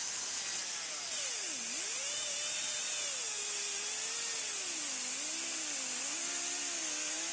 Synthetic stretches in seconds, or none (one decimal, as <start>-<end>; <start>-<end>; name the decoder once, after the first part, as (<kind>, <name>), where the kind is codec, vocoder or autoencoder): none